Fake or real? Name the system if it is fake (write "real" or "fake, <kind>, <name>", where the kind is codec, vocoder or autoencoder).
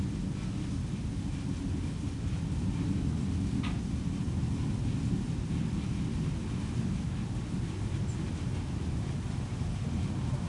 real